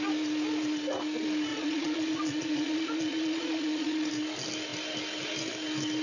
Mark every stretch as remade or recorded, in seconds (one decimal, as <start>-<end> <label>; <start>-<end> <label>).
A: 0.0-1.5 recorded; 1.5-4.1 remade; 4.1-6.0 recorded